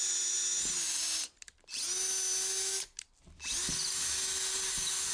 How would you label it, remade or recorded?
recorded